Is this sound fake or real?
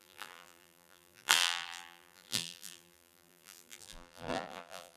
fake